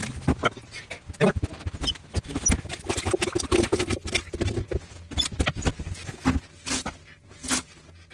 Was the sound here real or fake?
real